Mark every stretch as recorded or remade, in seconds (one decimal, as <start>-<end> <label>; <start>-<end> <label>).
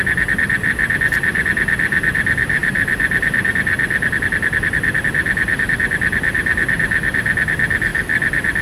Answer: 0.0-8.6 recorded